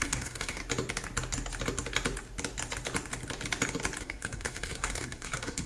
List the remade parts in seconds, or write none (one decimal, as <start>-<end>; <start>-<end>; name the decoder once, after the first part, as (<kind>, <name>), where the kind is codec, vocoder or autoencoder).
0.0-0.6 (codec, SNAC); 4.0-5.7